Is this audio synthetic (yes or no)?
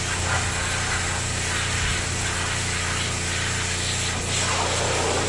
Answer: no